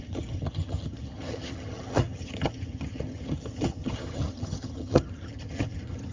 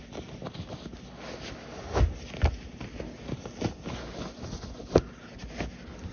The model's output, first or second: first